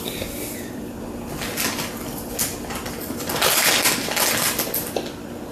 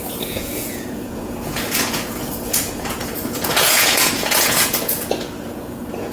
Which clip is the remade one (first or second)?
second